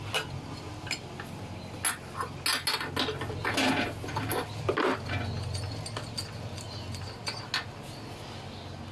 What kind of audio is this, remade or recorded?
recorded